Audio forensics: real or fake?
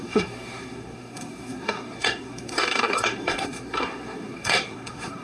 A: fake